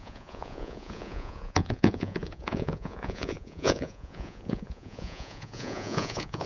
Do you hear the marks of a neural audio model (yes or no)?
yes